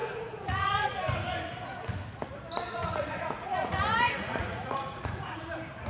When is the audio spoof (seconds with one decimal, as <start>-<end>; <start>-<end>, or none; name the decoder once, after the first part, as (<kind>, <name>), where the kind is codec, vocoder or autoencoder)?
0.0-1.0 (vocoder, Vocos); 2.8-5.4